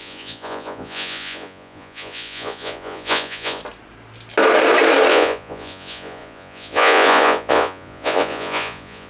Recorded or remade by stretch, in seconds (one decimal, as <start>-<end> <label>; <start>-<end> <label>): 0.0-3.6 remade; 3.6-5.1 recorded; 5.1-9.1 remade